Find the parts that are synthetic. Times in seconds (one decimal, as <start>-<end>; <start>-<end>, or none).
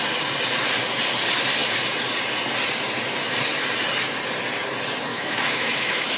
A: 5.1-6.2